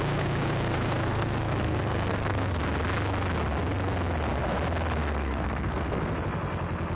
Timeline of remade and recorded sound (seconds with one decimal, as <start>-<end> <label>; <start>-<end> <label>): 0.0-1.1 recorded; 1.1-2.6 remade; 2.6-5.0 recorded; 5.0-6.1 remade; 6.1-7.0 recorded